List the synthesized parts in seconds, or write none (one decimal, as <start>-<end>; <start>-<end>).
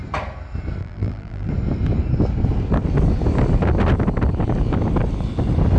0.8-1.5